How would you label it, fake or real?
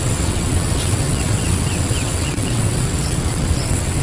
fake